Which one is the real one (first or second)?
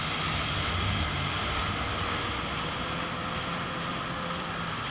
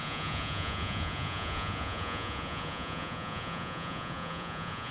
first